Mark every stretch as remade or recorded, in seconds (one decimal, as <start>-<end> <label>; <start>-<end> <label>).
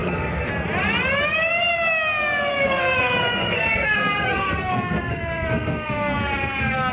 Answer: 0.0-0.5 remade; 0.5-2.5 recorded; 2.5-6.9 remade